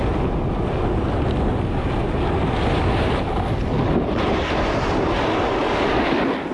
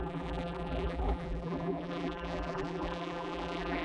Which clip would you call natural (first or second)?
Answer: first